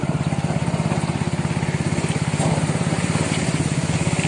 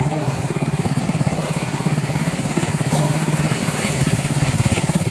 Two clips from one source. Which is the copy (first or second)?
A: second